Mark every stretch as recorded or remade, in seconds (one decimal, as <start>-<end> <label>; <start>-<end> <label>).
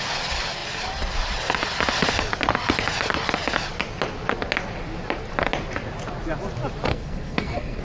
0.0-6.9 recorded; 6.9-7.8 remade